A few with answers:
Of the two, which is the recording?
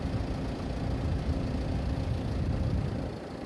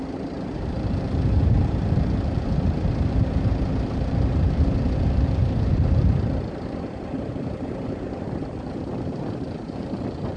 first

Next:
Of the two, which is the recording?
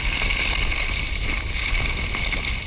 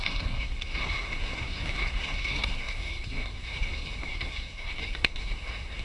first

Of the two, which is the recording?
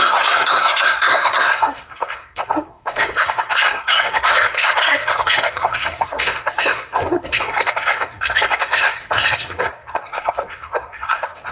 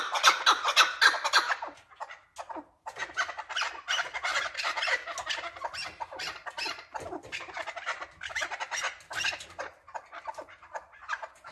second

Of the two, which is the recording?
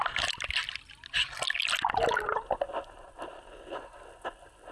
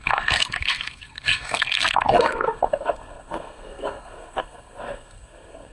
first